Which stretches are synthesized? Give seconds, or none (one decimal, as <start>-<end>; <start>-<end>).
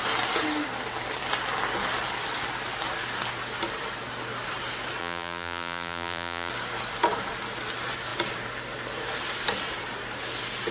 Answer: 5.0-6.5